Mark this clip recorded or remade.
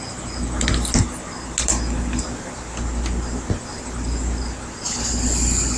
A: recorded